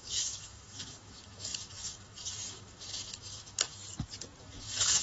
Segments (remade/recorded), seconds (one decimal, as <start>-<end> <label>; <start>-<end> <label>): 0.0-3.8 remade; 3.8-4.4 recorded; 4.4-5.0 remade